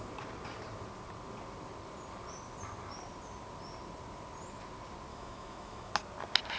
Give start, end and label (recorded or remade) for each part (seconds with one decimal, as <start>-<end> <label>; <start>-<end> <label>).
0.0-5.1 recorded; 5.1-5.9 remade; 5.9-6.6 recorded